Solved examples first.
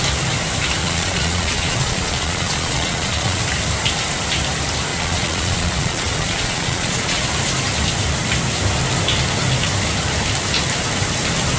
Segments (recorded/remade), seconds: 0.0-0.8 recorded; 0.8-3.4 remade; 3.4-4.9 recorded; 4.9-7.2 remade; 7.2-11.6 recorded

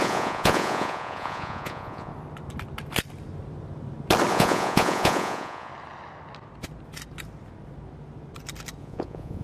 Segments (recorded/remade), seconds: 0.0-2.1 remade; 2.1-4.3 recorded; 4.3-5.7 remade; 5.7-8.8 recorded; 8.8-9.4 remade

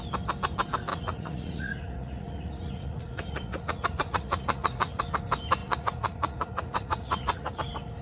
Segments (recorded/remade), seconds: 0.0-0.9 recorded; 0.9-5.0 remade; 5.0-5.6 recorded; 5.6-7.5 remade; 7.5-8.0 recorded

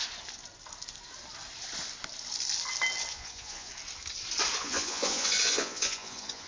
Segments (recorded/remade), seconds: 0.0-3.1 recorded; 3.1-3.7 remade; 3.7-4.6 recorded; 4.6-6.5 remade

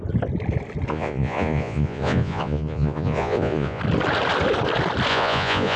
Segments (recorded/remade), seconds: 0.0-0.9 recorded; 0.9-3.8 remade; 3.8-5.1 recorded; 5.1-5.8 remade

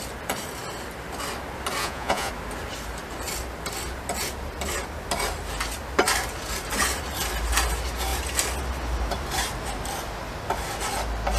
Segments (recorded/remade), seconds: 0.0-1.8 recorded; 1.8-2.3 remade; 2.3-11.4 recorded

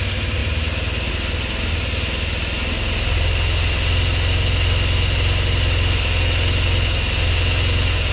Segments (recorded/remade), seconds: 0.0-8.1 recorded

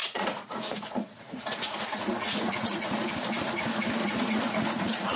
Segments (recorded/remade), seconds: 0.0-3.1 remade; 3.1-4.0 recorded; 4.0-5.2 remade